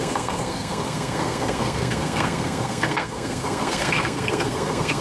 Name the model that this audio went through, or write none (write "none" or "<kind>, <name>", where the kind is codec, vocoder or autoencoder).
codec, SNAC